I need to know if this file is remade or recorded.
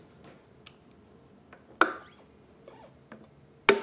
recorded